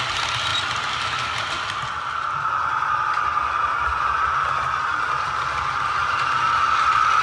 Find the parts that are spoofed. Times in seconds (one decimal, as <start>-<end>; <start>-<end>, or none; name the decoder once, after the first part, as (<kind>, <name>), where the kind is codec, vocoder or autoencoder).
none